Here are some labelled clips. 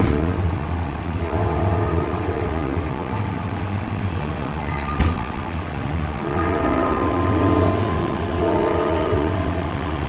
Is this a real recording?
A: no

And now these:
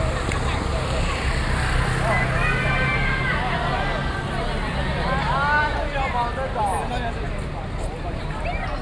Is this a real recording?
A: yes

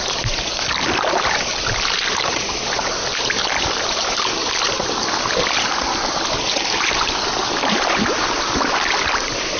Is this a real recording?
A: yes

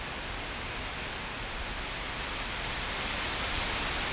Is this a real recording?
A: yes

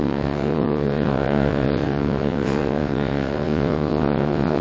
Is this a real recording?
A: no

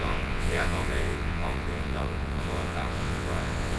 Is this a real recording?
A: no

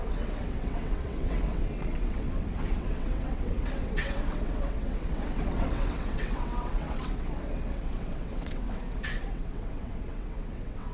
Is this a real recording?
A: no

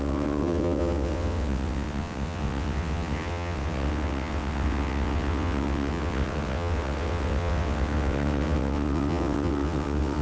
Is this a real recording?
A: no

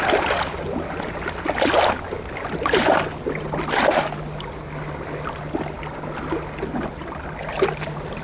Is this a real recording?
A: yes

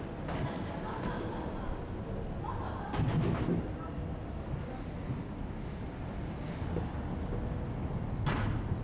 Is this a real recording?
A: yes